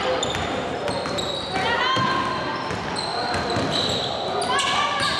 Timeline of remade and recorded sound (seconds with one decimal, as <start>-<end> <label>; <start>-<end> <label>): 0.0-5.2 recorded